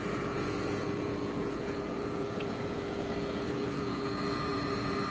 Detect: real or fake fake